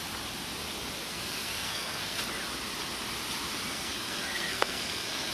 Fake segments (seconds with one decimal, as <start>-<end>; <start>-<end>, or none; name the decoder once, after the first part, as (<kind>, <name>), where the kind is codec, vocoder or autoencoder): 1.1-2.2 (codec, SNAC); 3.7-5.3